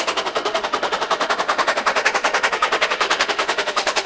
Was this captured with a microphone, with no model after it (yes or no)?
no